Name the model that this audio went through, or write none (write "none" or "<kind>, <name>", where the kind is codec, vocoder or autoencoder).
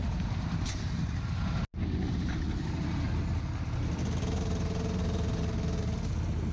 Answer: none